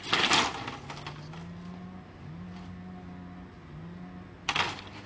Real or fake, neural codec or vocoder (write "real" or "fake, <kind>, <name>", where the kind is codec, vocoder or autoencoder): real